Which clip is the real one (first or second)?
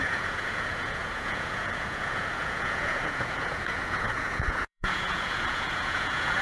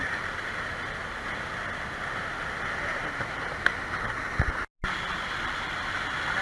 second